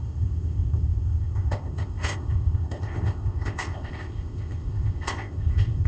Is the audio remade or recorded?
remade